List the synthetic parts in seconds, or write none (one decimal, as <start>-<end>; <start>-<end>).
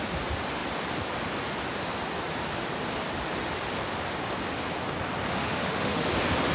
5.3-6.1